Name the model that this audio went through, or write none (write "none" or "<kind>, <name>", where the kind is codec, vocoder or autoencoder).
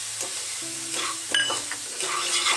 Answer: none